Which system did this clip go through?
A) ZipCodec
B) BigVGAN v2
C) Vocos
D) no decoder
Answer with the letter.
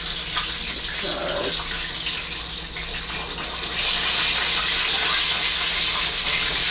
D